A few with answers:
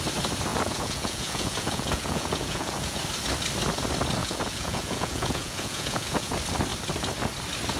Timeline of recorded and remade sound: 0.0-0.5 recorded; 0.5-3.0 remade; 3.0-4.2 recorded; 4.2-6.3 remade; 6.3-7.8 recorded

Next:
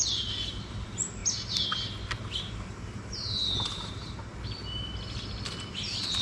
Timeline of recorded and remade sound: 0.0-1.2 remade; 1.2-2.5 recorded; 2.5-4.3 remade; 4.3-5.7 recorded; 5.7-6.2 remade

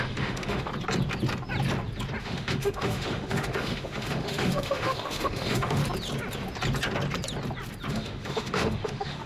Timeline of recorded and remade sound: 0.0-0.7 remade; 0.7-2.2 recorded; 2.2-5.8 remade; 5.8-7.9 recorded; 7.9-9.3 remade

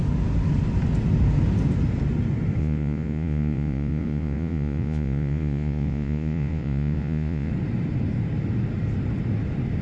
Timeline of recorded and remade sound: 0.0-2.6 recorded; 2.6-7.5 remade; 7.5-9.8 recorded